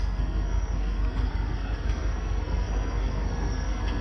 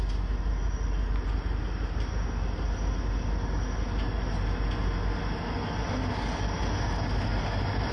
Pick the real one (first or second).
second